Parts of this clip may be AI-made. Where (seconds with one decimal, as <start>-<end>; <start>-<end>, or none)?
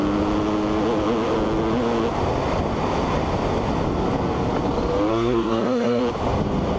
5.1-6.0